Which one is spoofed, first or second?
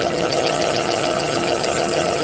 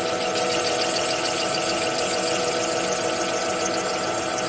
first